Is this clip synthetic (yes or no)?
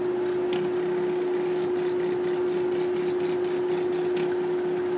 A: no